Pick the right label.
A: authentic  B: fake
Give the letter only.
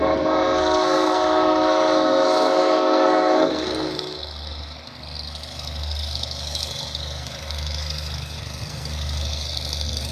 B